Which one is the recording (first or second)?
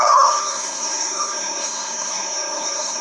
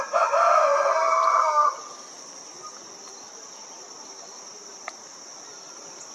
second